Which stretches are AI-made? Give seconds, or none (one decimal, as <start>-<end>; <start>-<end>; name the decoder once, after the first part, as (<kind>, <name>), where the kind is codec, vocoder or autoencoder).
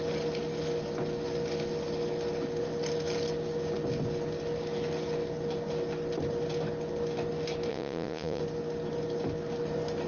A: 7.7-8.4 (vocoder, Vocos)